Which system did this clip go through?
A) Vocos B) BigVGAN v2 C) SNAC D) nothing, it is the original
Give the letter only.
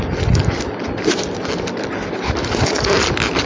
D